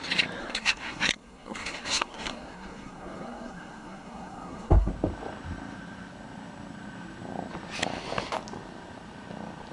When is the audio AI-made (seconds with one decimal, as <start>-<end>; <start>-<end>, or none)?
0.4-4.9